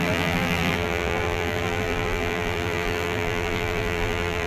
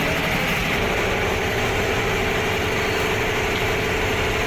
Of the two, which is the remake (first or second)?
first